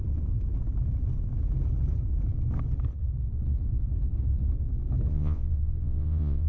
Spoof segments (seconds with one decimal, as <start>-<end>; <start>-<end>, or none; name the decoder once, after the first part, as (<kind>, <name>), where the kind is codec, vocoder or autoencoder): 5.1-6.5 (vocoder, Vocos)